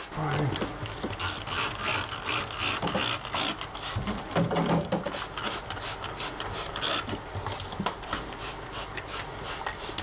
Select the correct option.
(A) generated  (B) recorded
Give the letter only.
B